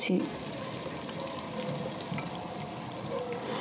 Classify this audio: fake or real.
fake